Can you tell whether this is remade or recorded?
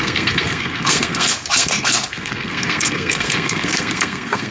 remade